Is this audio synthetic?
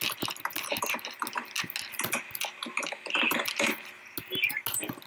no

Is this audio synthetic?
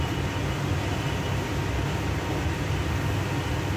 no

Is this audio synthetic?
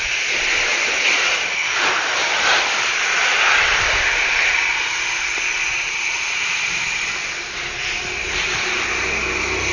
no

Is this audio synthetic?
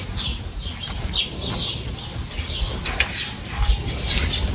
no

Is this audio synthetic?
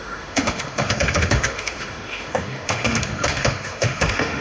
yes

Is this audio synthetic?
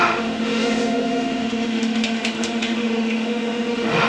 yes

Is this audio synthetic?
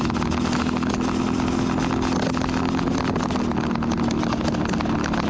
no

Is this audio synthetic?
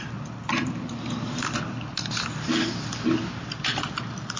no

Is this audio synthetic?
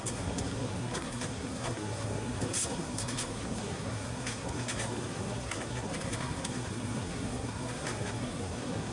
yes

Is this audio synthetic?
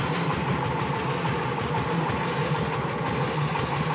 no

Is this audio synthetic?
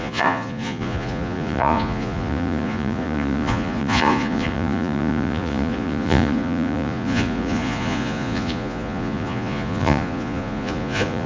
yes